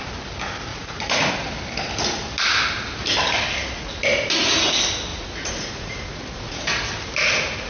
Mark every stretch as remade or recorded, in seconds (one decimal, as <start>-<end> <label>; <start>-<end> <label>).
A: 0.0-0.7 recorded; 0.7-1.3 remade; 1.3-5.1 recorded; 5.1-6.6 remade; 6.6-7.7 recorded